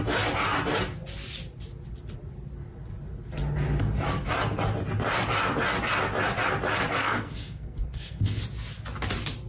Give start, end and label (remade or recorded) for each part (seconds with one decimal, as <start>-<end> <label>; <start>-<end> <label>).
0.0-7.0 recorded; 7.0-8.4 remade; 8.4-9.5 recorded